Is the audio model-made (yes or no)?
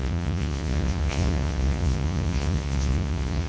yes